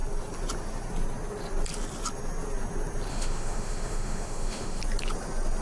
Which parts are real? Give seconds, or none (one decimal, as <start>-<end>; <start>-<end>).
0.0-3.1; 4.8-5.6